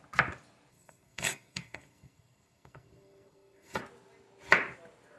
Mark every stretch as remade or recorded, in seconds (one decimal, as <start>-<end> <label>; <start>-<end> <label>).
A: 0.0-0.7 recorded; 0.7-3.8 remade; 3.8-5.2 recorded